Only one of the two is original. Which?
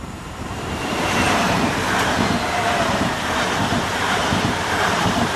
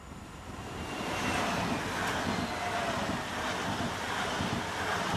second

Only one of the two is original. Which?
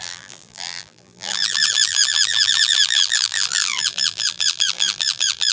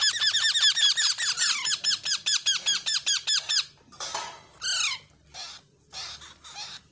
second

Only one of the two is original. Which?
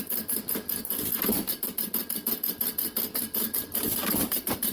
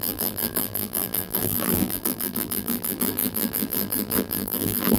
first